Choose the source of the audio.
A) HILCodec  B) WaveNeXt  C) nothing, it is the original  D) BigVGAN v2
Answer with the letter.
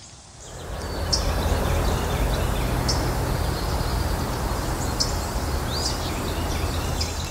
C